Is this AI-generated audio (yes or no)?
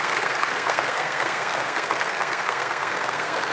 yes